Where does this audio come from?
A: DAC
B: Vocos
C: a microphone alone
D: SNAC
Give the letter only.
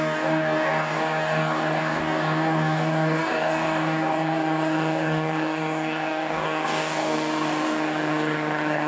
A